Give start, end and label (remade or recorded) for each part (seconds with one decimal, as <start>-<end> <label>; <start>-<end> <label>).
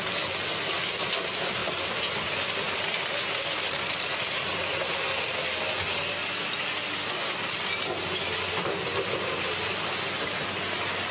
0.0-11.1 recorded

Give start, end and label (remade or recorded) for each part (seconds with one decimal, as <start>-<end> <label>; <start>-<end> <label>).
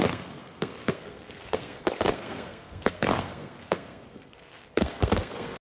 0.0-5.6 remade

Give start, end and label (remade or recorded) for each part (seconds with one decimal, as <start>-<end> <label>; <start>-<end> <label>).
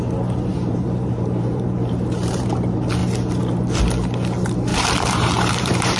0.0-0.5 recorded; 0.5-2.5 remade; 2.5-4.7 recorded; 4.7-6.0 remade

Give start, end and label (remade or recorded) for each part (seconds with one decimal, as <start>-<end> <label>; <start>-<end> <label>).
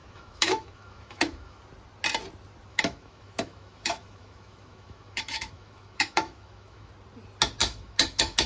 0.0-1.6 remade; 1.6-2.7 recorded; 2.7-6.9 remade; 6.9-7.6 recorded; 7.6-8.5 remade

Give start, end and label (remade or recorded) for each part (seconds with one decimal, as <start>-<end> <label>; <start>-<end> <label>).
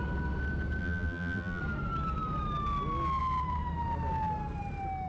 0.0-0.8 recorded; 0.8-1.6 remade; 1.6-5.1 recorded